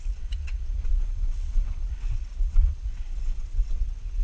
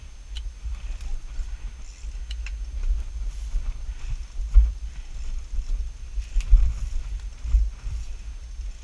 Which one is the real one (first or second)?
second